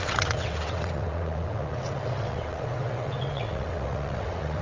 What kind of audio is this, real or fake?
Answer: fake